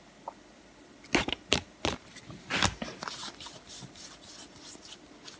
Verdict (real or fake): real